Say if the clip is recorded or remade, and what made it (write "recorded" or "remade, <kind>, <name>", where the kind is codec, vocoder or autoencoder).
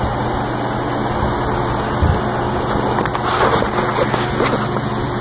recorded